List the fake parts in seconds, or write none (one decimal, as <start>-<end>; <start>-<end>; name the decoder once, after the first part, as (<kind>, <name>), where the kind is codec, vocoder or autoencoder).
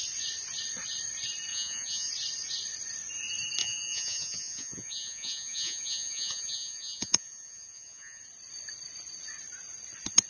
1.5-2.1 (vocoder, Vocos); 3.6-8.2